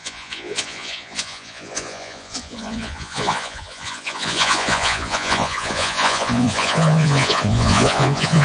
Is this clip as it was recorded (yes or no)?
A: no